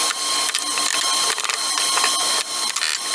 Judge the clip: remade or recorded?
recorded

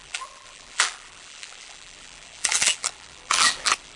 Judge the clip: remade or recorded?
remade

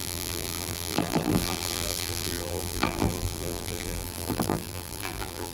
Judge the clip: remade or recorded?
remade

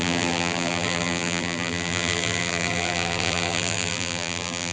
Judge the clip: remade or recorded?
remade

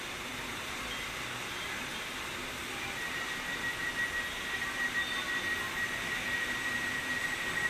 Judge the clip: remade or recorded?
remade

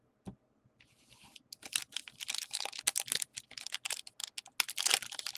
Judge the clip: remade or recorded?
recorded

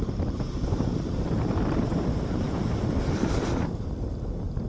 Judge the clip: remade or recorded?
remade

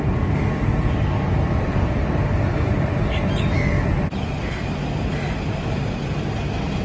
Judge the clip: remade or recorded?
recorded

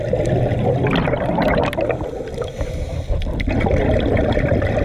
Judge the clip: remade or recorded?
recorded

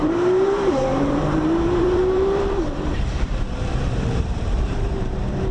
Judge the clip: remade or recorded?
remade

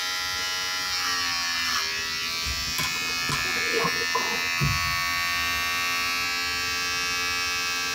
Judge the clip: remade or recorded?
recorded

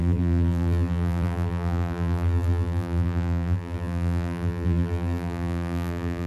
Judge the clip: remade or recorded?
remade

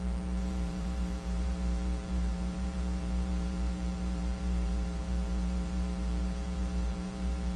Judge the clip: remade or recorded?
remade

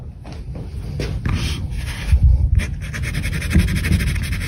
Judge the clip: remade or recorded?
recorded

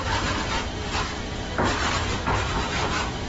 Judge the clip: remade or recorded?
remade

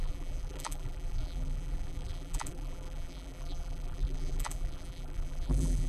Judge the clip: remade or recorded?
remade